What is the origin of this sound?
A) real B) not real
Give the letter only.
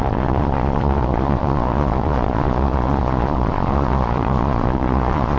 B